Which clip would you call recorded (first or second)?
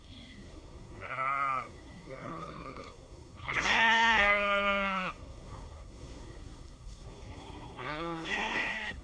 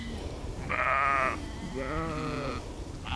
second